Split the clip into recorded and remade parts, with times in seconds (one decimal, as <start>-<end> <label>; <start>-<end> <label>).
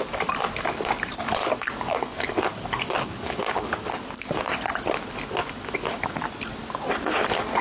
0.0-1.4 recorded; 1.4-4.3 remade; 4.3-5.4 recorded; 5.4-6.1 remade; 6.1-7.6 recorded